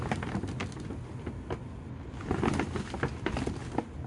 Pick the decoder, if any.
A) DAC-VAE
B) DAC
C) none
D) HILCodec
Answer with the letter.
C